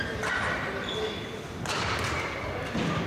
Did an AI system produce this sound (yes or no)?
no